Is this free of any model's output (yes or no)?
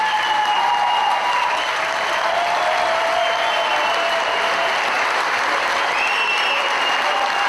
yes